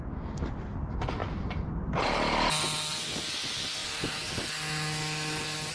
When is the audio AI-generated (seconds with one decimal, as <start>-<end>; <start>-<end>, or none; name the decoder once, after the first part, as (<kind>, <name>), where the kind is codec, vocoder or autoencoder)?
1.2-2.0 (vocoder, BigVGAN v2); 3.8-4.3